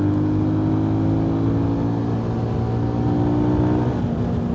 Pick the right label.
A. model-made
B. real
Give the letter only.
B